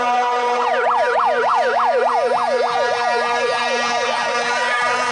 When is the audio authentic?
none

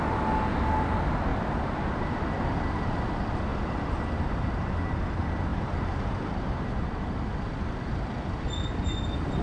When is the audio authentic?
0.0-1.3; 1.8-5.5; 6.9-9.4

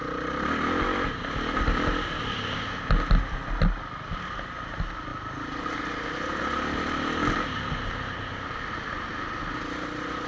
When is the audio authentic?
0.0-10.3

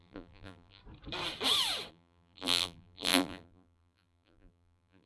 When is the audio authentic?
0.8-1.9